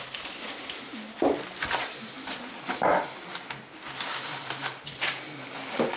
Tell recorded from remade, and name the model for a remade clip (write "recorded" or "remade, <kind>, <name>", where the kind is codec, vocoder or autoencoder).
recorded